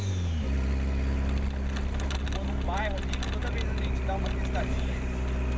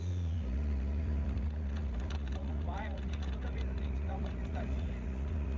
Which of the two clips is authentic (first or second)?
first